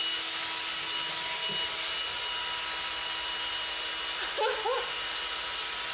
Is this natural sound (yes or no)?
yes